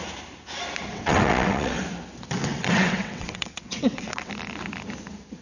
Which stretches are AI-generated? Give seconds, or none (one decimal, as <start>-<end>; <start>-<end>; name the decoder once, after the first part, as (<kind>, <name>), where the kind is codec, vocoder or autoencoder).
0.9-1.8 (vocoder, WaveNeXt); 2.4-4.3